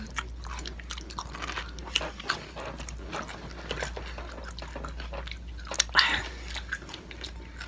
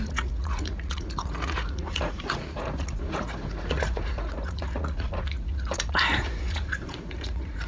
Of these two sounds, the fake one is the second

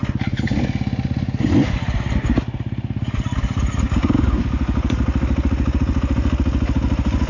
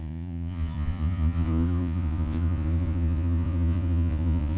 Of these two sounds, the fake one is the second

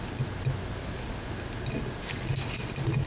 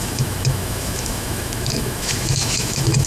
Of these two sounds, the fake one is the second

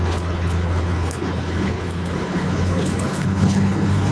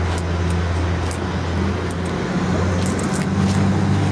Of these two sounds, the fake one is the first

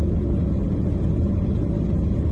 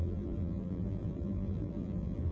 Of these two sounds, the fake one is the second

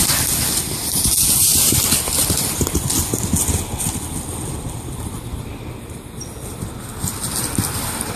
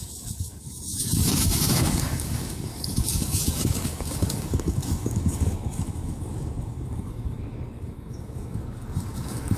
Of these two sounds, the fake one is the second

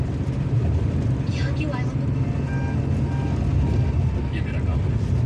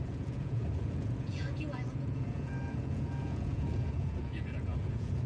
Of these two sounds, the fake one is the second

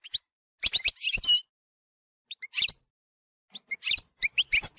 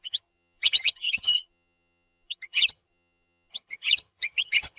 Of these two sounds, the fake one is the second